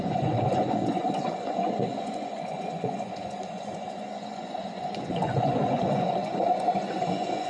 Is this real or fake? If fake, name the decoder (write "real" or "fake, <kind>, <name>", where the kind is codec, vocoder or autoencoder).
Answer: fake, vocoder, Vocos